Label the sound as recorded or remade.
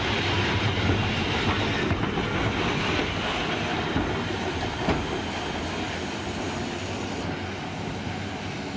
recorded